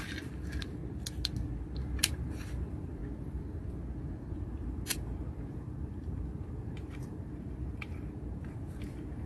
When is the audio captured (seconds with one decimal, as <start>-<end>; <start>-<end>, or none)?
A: 0.8-2.0; 3.0-4.3